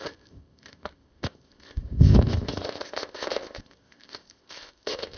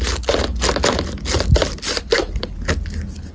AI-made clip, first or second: first